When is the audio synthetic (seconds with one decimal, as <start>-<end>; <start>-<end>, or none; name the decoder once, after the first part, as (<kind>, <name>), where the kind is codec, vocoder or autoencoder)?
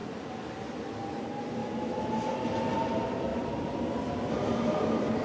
1.6-2.1 (autoencoder, DAC-VAE)